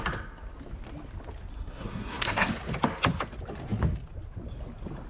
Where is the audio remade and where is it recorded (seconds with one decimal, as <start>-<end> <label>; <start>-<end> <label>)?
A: 0.0-1.5 recorded; 1.5-2.5 remade; 2.5-5.1 recorded

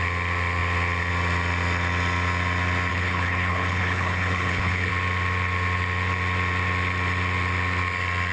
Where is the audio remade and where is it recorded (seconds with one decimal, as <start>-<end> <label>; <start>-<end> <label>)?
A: 0.0-2.9 recorded; 2.9-4.9 remade; 4.9-8.3 recorded